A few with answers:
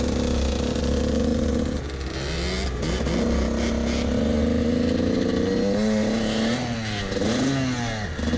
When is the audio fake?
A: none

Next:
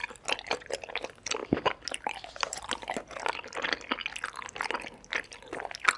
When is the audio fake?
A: none

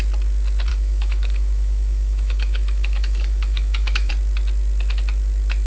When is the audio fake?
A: 0.7-4.1 (autoencoder, DAC-VAE)

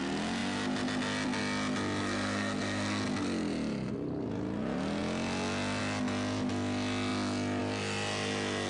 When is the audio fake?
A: 2.0-3.0 (codec, SNAC)

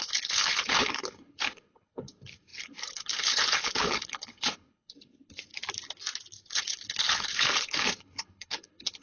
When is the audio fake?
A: 0.0-5.5 (codec, HILCodec); 6.4-9.0

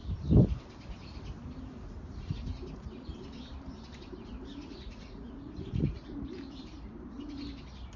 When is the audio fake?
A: 4.5-6.6 (vocoder, Vocos)

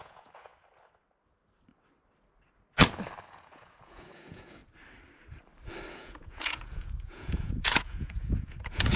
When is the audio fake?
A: 0.0-0.5 (vocoder, Vocos); 3.3-4.6; 5.9-9.0

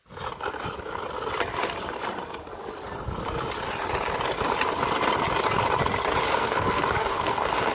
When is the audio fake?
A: 6.3-7.7 (codec, SNAC)